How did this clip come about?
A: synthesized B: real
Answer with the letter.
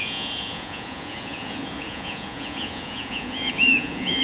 A